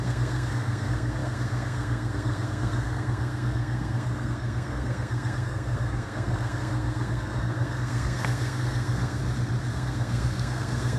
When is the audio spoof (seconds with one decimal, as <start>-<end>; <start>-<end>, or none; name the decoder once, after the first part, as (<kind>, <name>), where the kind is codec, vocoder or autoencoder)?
0.0-9.2 (codec, SNAC); 9.7-11.0